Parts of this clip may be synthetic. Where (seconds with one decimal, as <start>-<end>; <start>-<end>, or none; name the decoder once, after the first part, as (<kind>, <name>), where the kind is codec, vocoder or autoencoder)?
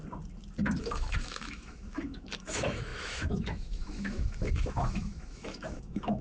0.8-6.2 (autoencoder, DAC-VAE)